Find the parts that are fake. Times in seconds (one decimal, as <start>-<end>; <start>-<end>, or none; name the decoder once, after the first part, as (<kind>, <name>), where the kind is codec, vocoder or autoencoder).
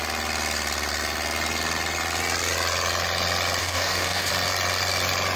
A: 3.6-4.3 (codec, DAC)